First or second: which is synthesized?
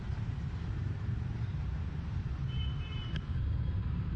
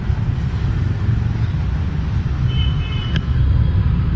first